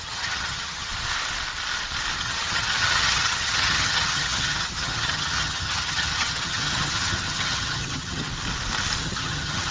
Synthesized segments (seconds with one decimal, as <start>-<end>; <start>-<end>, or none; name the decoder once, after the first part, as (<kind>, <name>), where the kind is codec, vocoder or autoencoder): 0.0-0.9 (vocoder, HiFi-GAN); 2.2-8.3; 9.0-9.7